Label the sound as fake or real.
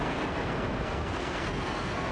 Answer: fake